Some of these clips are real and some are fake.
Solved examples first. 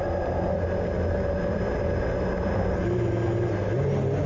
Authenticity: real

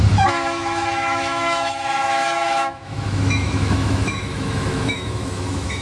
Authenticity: fake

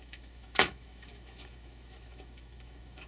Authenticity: fake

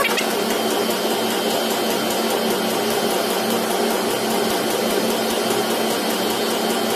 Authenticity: real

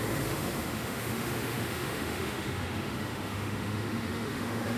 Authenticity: fake